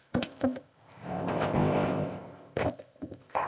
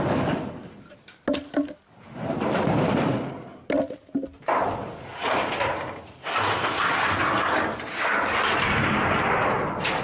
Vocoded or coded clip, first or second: first